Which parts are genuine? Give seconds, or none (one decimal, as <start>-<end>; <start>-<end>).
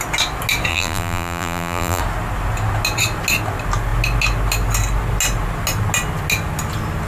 0.0-0.7; 2.0-7.1